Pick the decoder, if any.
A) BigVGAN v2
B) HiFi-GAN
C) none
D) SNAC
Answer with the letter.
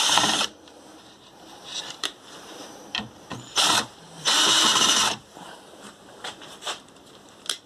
A